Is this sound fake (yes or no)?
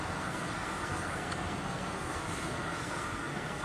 yes